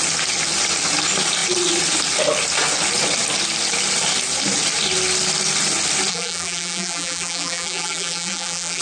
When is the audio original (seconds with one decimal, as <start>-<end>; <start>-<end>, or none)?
0.0-6.1